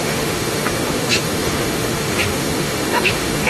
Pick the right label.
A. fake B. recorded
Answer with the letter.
A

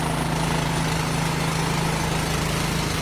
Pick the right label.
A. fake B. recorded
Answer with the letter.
B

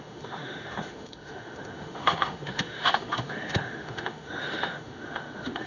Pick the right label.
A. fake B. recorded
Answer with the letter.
A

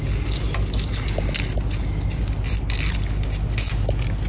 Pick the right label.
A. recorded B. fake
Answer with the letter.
A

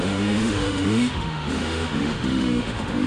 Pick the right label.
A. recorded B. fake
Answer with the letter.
B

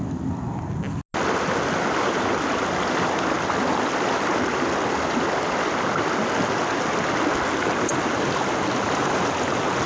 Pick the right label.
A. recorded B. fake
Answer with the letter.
A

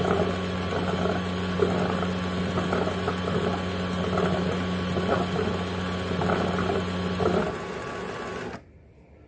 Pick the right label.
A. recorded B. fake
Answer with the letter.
A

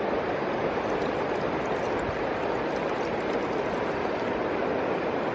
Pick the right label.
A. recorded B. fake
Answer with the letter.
A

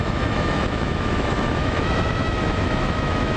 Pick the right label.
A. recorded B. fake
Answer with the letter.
B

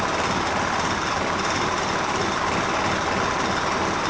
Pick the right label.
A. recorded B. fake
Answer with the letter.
A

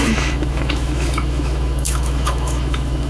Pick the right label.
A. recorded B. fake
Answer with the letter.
B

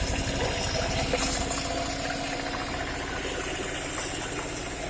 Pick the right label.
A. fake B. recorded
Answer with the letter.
B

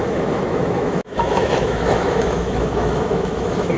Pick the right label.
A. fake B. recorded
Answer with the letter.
A